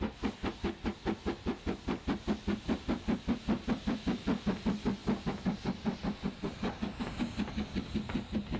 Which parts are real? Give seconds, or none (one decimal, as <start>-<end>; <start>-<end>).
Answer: 0.0-8.6